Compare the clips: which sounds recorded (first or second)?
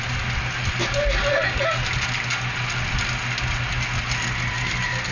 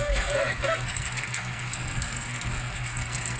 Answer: first